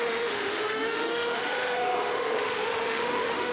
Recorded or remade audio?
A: remade